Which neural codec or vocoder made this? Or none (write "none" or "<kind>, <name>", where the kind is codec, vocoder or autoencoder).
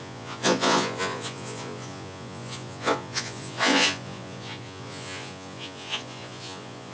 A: vocoder, Vocos